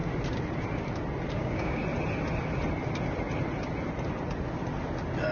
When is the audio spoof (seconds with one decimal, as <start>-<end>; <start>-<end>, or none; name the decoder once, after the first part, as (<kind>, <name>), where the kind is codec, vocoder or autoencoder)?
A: 1.3-1.8 (codec, DAC)